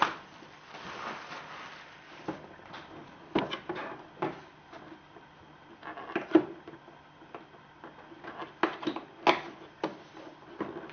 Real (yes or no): yes